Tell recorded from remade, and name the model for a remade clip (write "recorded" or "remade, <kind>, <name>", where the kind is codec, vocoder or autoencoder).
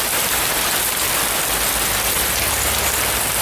recorded